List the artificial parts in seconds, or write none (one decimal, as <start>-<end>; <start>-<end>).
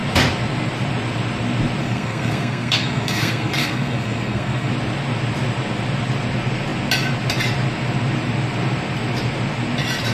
1.8-4.7